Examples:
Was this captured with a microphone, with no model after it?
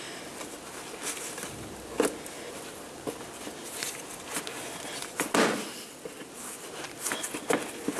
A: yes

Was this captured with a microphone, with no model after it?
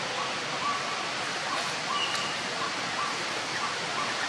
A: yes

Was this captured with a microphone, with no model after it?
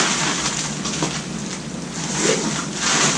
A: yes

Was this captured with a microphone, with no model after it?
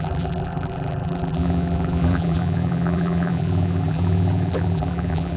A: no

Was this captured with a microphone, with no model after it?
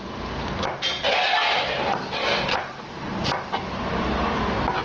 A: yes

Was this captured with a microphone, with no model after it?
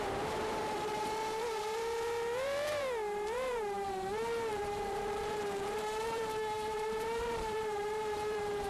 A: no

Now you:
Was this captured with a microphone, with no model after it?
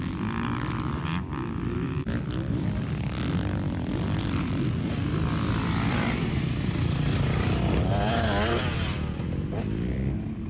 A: no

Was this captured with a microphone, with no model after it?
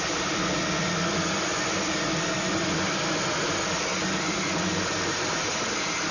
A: no